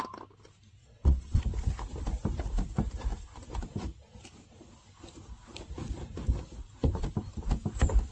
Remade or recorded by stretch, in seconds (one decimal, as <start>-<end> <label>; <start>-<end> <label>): 0.0-0.8 recorded; 0.8-1.4 remade; 1.4-8.1 recorded